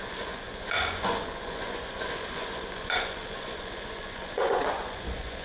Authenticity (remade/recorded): remade